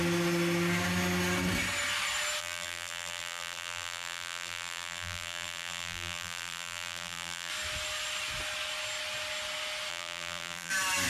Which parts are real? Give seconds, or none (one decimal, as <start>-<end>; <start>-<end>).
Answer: 0.0-2.4; 7.5-9.9; 10.7-11.1